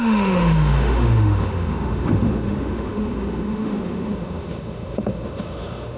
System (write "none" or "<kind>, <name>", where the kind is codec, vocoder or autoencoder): autoencoder, DAC-VAE